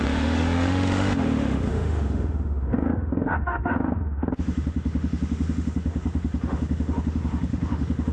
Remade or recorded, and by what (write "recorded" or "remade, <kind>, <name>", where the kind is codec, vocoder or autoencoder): remade, autoencoder, DAC-VAE